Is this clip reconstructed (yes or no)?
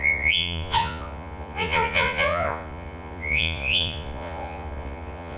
yes